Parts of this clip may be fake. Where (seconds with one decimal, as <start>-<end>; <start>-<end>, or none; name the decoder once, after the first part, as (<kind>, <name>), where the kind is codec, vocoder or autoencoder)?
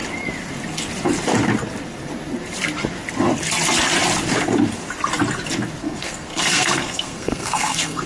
5.8-8.1 (codec, SNAC)